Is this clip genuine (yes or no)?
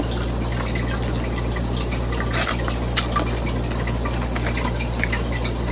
yes